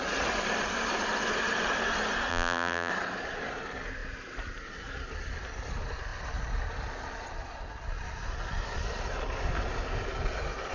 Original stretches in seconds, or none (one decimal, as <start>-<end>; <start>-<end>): 0.0-2.3; 2.9-10.7